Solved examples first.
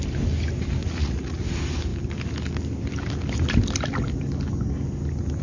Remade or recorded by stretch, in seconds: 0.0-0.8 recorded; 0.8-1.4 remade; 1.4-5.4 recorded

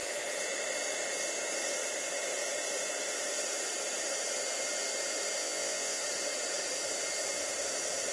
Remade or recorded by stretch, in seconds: 0.0-5.4 recorded; 5.4-6.0 remade; 6.0-8.1 recorded

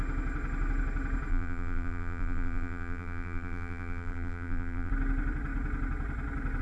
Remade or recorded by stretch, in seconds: 0.0-1.3 recorded; 1.3-4.9 remade; 4.9-6.6 recorded

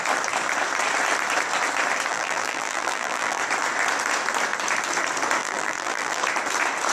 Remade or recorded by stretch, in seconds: 0.0-2.1 recorded; 2.1-3.4 remade; 3.4-5.4 recorded; 5.4-6.2 remade; 6.2-6.9 recorded

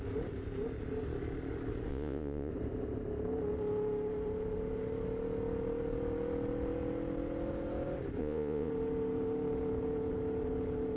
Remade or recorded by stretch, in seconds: 0.0-1.9 recorded; 1.9-2.5 remade; 2.5-8.2 recorded; 8.2-8.7 remade; 8.7-11.0 recorded

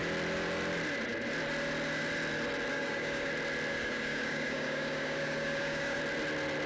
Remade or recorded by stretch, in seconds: 0.0-2.7 recorded; 2.7-3.3 remade; 3.3-3.7 recorded; 3.7-6.0 remade; 6.0-6.7 recorded

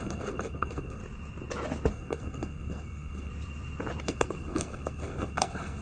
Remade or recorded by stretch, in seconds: 0.0-1.0 remade; 1.0-1.9 recorded; 1.9-3.3 remade; 3.3-4.0 recorded; 4.0-5.8 remade

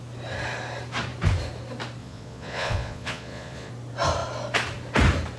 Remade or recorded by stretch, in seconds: 0.0-2.0 recorded; 2.0-3.7 remade; 3.7-5.4 recorded